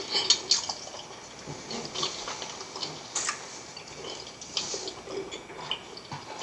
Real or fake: real